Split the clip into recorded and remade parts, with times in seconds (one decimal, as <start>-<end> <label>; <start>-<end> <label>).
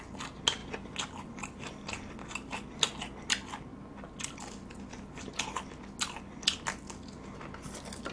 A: 0.0-8.1 recorded